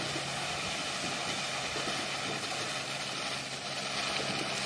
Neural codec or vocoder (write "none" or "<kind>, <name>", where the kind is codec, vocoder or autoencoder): none